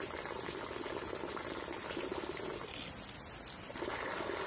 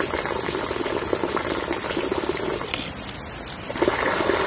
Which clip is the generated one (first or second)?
second